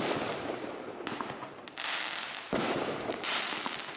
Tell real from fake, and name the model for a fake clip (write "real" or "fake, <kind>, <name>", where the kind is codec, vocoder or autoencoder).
fake, vocoder, BigVGAN v2